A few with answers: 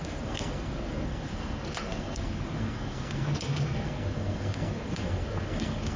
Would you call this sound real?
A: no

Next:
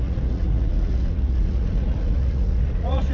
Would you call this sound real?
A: no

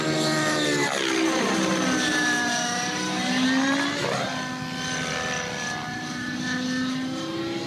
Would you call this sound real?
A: yes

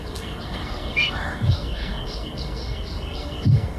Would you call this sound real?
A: no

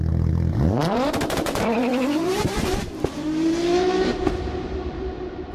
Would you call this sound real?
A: no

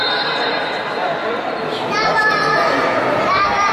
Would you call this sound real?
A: yes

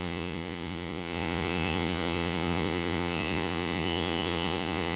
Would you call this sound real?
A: no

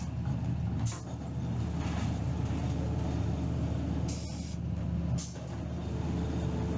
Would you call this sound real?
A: yes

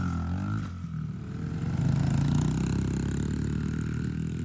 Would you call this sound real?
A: yes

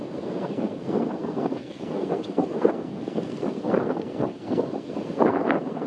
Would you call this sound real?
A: no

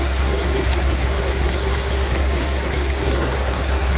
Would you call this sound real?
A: no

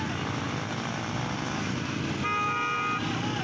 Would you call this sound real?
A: yes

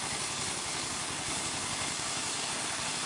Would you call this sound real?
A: no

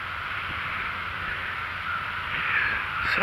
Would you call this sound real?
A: yes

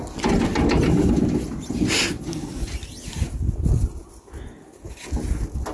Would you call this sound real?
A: yes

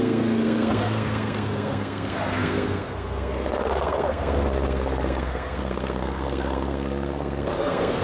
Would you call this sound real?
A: no